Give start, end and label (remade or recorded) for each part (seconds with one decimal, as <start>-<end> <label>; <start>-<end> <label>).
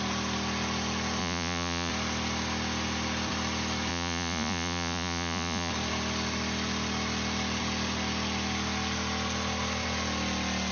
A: 0.0-1.2 recorded; 1.2-1.9 remade; 1.9-3.9 recorded; 3.9-5.7 remade; 5.7-10.7 recorded